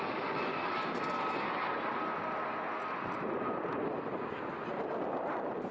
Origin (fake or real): real